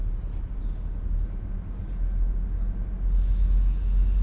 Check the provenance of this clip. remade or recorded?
recorded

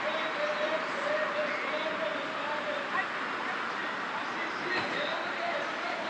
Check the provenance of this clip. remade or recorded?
recorded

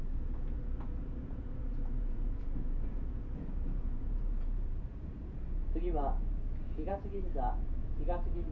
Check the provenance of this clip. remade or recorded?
remade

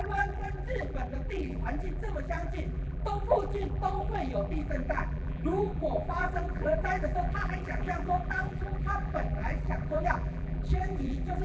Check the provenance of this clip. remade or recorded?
remade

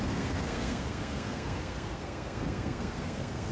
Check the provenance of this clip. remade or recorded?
remade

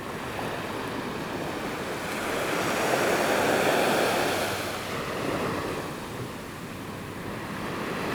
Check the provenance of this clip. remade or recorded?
recorded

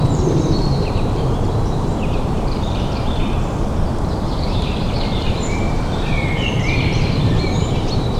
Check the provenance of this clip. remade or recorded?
remade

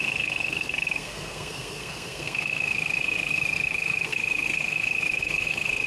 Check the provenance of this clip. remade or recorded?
remade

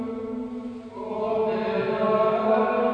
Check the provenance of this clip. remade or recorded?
recorded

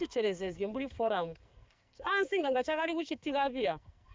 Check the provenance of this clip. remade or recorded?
remade